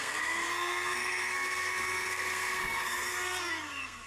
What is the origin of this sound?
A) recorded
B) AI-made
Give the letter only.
B